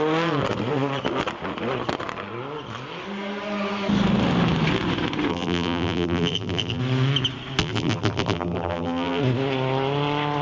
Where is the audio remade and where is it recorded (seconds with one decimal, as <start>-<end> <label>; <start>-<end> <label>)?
0.0-5.3 recorded; 5.3-6.8 remade; 6.8-7.6 recorded; 7.6-9.2 remade; 9.2-10.4 recorded